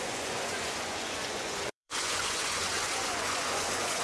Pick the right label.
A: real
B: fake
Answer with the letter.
B